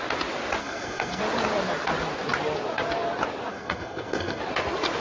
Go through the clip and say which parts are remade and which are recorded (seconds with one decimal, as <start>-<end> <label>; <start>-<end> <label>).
0.0-0.6 recorded; 0.6-1.2 remade; 1.2-3.5 recorded; 3.5-4.4 remade; 4.4-5.0 recorded